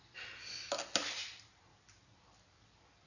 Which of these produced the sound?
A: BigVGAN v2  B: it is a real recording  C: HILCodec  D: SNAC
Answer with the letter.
B